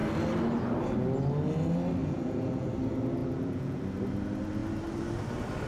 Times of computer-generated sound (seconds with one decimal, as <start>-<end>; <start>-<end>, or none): 2.0-2.7; 3.2-3.8